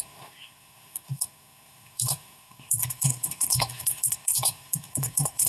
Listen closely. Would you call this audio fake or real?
fake